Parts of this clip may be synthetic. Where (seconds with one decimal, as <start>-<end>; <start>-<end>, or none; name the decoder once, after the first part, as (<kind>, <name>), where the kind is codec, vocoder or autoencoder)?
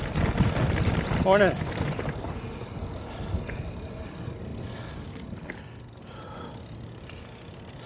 none